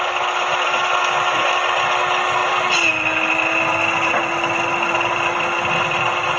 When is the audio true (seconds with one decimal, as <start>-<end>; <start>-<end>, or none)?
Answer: 0.0-6.4